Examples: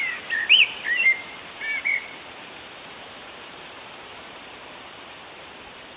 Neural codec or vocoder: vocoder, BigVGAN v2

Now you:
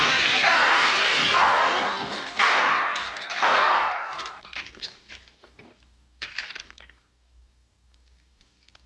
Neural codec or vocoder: codec, DAC